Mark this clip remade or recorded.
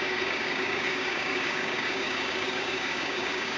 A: remade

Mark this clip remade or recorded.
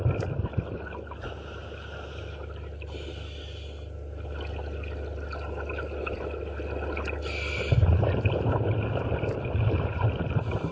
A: recorded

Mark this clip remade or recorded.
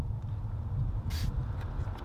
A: recorded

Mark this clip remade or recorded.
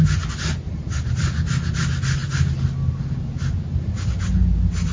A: recorded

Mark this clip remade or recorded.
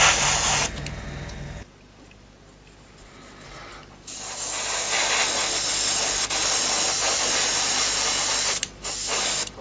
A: recorded